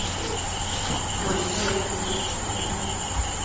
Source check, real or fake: real